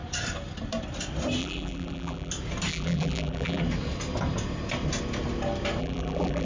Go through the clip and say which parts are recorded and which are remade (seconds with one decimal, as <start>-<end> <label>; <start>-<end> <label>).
0.0-1.4 recorded; 1.4-2.3 remade; 2.3-2.7 recorded; 2.7-3.6 remade; 3.6-5.8 recorded; 5.8-6.5 remade